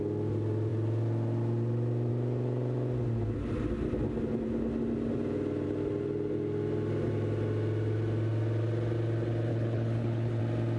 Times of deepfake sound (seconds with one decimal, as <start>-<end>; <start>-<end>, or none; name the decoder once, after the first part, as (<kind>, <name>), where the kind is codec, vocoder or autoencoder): 9.5-10.4 (codec, HILCodec)